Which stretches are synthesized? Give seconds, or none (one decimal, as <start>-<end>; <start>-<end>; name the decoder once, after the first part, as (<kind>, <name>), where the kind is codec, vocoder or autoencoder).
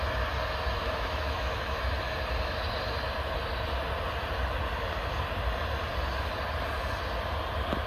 0.8-1.8 (autoencoder, DAC-VAE)